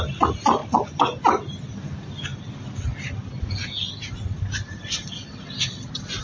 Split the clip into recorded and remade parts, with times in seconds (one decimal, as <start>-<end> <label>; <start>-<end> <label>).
0.0-6.2 recorded